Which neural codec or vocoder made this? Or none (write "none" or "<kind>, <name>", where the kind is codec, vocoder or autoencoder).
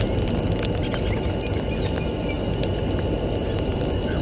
none